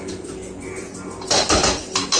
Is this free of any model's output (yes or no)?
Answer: yes